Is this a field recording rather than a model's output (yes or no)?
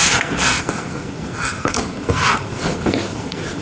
no